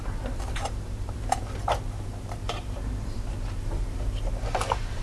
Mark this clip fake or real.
fake